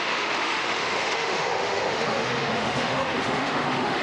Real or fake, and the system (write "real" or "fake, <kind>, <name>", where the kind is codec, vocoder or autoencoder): fake, autoencoder, DAC-VAE